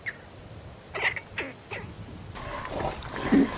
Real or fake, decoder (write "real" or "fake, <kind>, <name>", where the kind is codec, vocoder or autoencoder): real